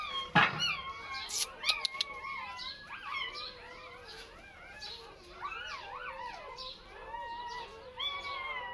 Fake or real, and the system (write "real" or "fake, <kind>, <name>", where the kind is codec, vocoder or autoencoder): real